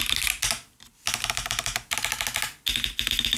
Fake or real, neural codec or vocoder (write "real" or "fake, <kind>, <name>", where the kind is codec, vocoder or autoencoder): real